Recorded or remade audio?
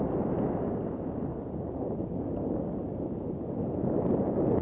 recorded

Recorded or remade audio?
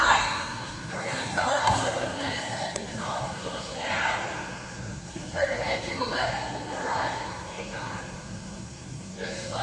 remade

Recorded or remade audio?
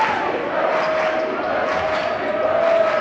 recorded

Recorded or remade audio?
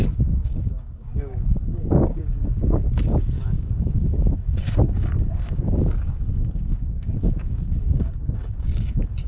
remade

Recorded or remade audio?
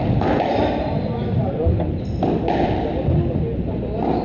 recorded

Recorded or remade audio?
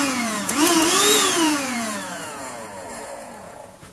remade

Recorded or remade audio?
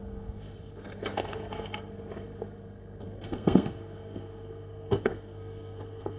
remade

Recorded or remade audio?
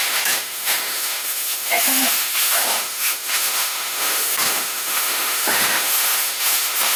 remade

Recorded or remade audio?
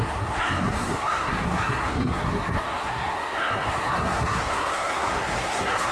remade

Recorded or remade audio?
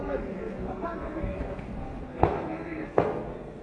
remade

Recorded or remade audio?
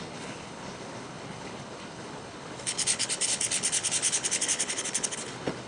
remade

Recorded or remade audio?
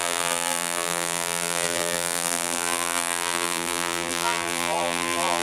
remade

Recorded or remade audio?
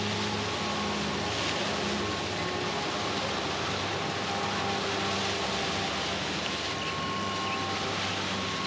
recorded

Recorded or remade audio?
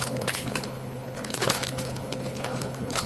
remade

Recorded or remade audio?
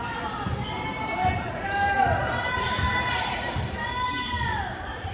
remade